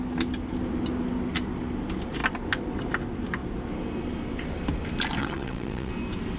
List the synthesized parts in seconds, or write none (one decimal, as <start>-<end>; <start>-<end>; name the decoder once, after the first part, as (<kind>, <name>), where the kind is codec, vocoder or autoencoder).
5.2-5.9 (vocoder, WaveNeXt)